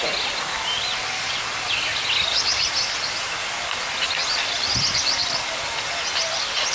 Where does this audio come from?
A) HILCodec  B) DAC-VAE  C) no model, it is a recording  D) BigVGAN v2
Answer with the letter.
C